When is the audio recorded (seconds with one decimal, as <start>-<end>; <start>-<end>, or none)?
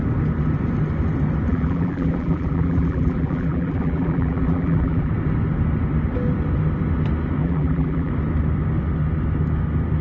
0.0-1.5; 5.1-7.4; 8.1-10.0